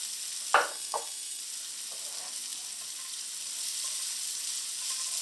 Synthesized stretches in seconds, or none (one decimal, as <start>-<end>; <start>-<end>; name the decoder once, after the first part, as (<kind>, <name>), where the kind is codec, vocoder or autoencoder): 0.7-1.4 (codec, SNAC)